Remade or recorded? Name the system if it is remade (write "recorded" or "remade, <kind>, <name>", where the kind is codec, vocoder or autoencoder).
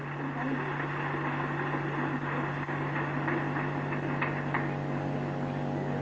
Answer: recorded